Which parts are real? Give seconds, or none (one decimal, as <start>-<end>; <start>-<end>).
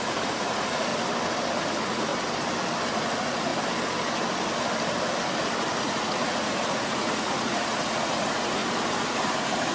0.9-1.6; 2.1-2.9; 3.5-5.8; 8.6-9.1